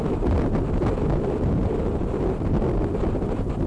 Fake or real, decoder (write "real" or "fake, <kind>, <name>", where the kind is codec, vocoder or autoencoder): real